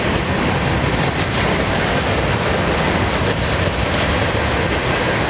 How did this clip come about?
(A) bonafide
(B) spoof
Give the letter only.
A